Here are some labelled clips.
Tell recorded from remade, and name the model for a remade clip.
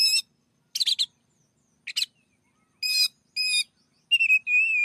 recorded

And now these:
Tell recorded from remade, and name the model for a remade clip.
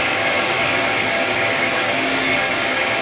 remade, codec, DAC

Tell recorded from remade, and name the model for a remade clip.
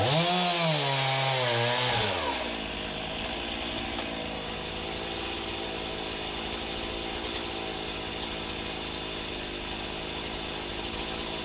recorded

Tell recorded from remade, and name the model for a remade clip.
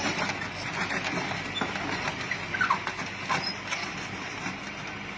recorded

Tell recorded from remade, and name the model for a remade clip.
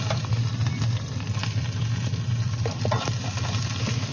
recorded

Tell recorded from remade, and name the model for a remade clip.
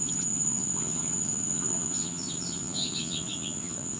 remade, vocoder, Vocos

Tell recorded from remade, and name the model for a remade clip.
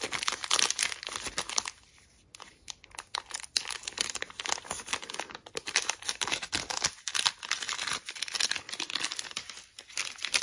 recorded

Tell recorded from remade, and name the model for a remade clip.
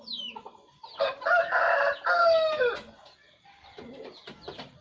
recorded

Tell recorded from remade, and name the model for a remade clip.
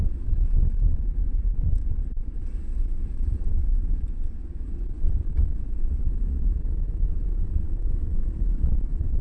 remade, vocoder, Vocos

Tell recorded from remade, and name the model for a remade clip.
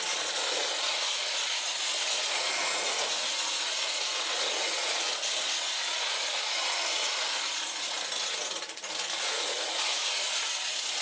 remade, vocoder, Vocos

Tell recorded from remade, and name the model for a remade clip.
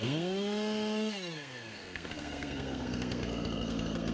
remade, codec, SNAC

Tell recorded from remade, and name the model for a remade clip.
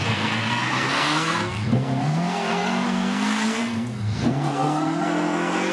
remade, codec, SNAC